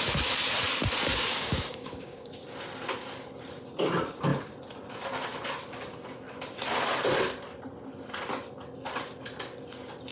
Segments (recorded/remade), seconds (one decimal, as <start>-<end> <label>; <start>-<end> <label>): 0.0-1.1 recorded; 1.1-2.3 remade; 2.3-10.1 recorded